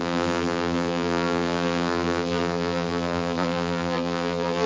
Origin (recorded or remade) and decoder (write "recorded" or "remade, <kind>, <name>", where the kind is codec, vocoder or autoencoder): remade, vocoder, BigVGAN v2